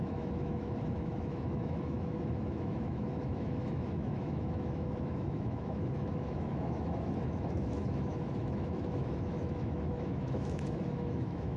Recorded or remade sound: remade